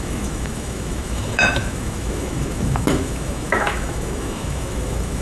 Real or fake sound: fake